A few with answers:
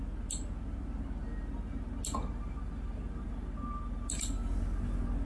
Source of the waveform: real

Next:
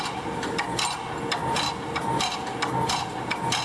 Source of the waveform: real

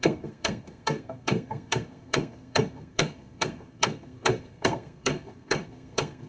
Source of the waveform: fake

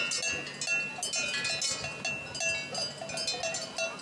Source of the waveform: real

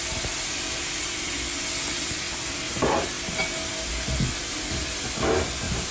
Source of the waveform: real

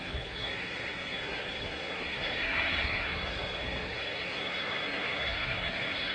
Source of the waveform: fake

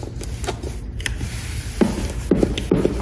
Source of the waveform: real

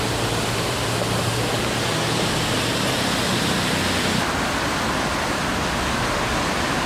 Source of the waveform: real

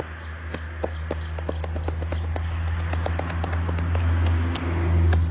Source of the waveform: real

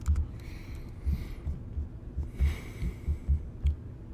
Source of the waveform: real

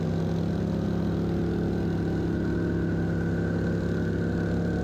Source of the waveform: real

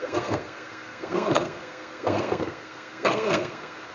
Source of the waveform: fake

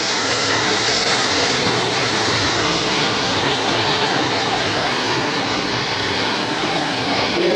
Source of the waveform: fake